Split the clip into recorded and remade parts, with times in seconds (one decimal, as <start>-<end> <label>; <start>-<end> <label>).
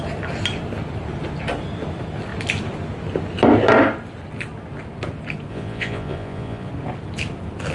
0.0-5.5 recorded; 5.5-6.7 remade; 6.7-7.7 recorded